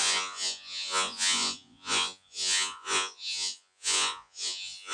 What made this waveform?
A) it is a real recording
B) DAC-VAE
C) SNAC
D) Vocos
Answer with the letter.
D